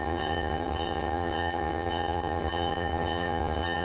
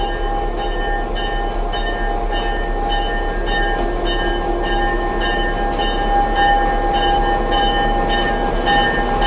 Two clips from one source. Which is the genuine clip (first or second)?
second